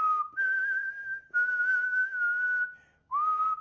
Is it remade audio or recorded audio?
remade